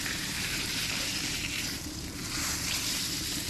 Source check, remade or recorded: remade